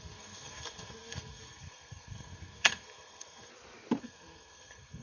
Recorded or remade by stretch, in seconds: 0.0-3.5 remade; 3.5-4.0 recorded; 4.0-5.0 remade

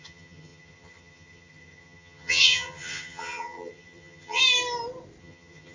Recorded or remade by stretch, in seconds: 0.0-4.4 remade; 4.4-5.2 recorded; 5.2-5.7 remade

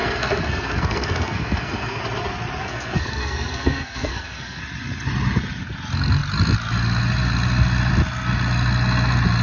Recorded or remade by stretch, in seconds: 0.0-2.0 remade; 2.0-2.6 recorded; 2.6-4.6 remade; 4.6-9.4 recorded

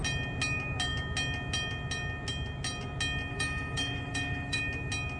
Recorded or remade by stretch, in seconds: 0.0-3.3 recorded; 3.3-4.6 remade; 4.6-5.2 recorded

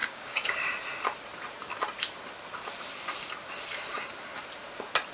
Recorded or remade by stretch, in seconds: 0.0-0.7 remade; 0.7-5.1 recorded

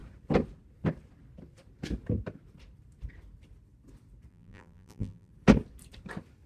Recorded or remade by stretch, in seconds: 0.0-4.3 recorded; 4.3-5.3 remade; 5.3-6.5 recorded

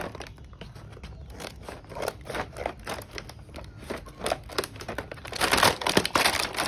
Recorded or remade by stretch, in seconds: 0.0-0.9 remade; 0.9-4.9 recorded; 4.9-6.7 remade